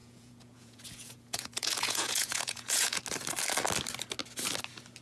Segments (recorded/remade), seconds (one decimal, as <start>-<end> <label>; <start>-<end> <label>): 0.0-3.0 remade; 3.0-5.0 recorded